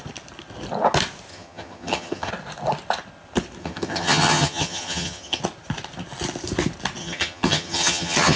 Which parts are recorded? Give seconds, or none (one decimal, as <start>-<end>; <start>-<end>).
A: 0.0-1.3; 2.3-3.6; 5.4-7.0